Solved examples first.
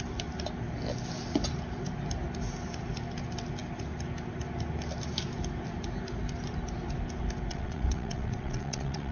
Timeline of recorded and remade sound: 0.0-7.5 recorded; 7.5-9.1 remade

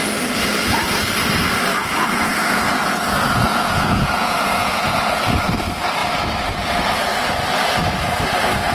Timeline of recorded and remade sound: 0.0-1.7 recorded; 1.7-5.0 remade; 5.0-8.7 recorded